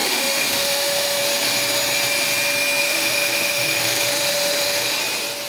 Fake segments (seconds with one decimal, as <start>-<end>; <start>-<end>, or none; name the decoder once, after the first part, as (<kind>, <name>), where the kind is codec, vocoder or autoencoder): 0.0-1.2 (autoencoder, DAC-VAE); 2.8-5.0